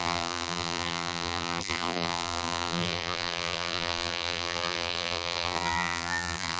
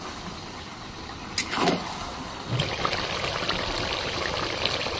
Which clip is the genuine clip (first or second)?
second